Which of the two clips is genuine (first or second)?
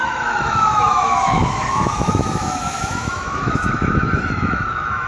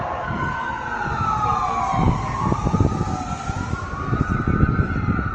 second